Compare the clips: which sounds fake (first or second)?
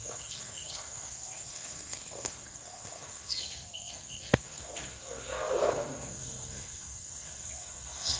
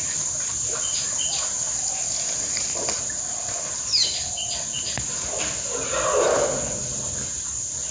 first